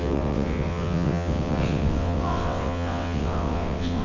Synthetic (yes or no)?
yes